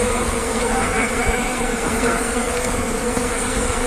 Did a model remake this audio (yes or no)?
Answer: yes